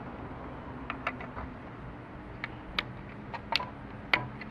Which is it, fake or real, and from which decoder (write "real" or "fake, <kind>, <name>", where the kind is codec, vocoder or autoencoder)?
real